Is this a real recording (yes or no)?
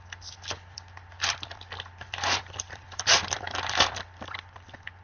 no